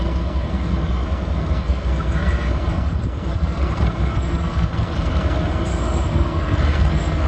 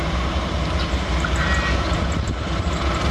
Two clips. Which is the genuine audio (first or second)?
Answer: second